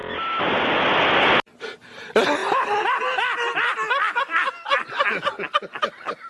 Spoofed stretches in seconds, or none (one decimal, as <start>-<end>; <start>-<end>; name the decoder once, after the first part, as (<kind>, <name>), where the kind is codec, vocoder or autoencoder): none